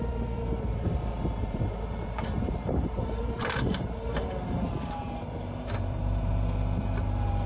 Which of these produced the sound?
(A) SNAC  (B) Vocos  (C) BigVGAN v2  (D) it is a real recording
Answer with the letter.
C